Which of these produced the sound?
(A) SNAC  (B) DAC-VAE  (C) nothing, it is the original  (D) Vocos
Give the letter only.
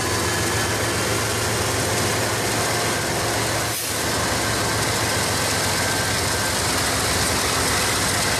C